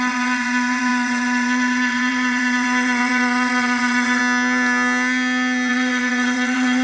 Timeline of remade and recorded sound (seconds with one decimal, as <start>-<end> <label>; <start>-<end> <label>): 0.0-4.2 remade; 4.2-5.7 recorded; 5.7-6.8 remade